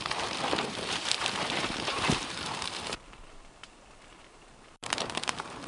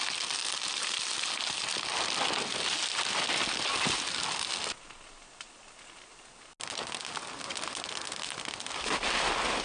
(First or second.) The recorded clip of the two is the second